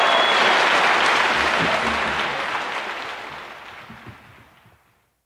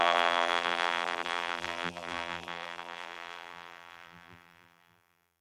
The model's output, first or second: second